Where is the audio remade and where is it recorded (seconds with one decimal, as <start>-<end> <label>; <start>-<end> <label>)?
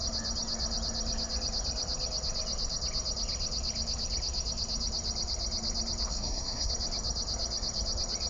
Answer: 0.0-6.1 recorded; 6.1-6.7 remade; 6.7-8.3 recorded